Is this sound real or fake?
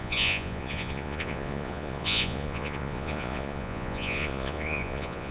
fake